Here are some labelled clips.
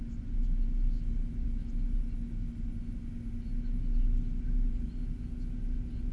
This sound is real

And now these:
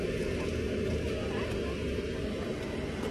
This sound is real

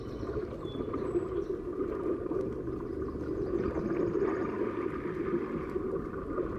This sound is real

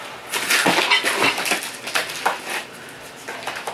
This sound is real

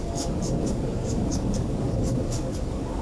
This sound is fake